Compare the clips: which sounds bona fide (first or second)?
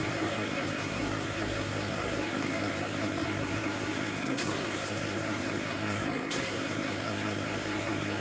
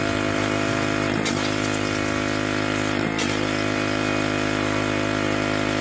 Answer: second